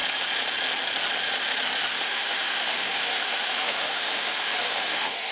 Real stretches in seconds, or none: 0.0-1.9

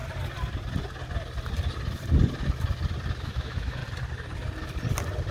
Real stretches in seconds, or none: 0.0-3.2; 3.8-5.3

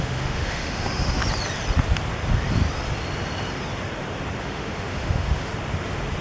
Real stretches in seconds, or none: 1.2-4.4; 5.5-6.2

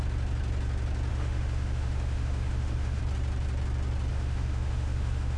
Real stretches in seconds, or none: 0.0-1.1; 3.0-4.1

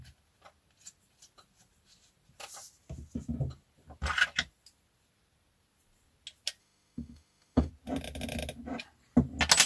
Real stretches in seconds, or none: 0.0-6.6; 7.7-9.7

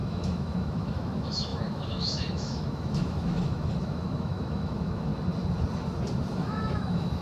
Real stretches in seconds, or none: 5.1-6.2

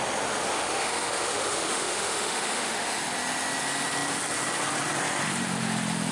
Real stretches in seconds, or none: 0.0-0.5; 3.0-6.1